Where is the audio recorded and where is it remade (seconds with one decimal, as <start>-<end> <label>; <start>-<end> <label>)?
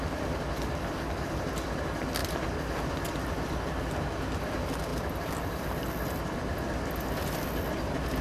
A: 0.0-4.9 recorded; 4.9-5.7 remade; 5.7-8.2 recorded